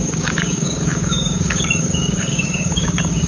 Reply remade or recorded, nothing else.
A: remade